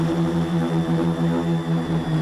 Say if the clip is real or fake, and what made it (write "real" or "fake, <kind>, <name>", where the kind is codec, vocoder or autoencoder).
fake, vocoder, BigVGAN v2